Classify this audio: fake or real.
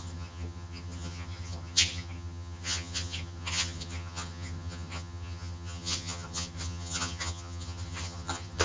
fake